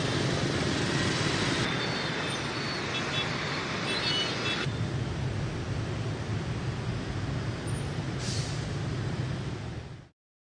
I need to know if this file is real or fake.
real